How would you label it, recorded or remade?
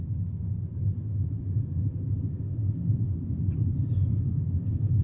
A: recorded